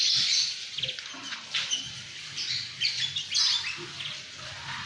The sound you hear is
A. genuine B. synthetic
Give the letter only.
A